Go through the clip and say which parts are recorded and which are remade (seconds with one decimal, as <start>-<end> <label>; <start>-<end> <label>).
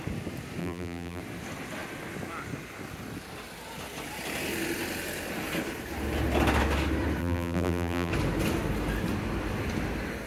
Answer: 0.0-0.6 recorded; 0.6-1.2 remade; 1.2-7.2 recorded; 7.2-8.1 remade; 8.1-10.3 recorded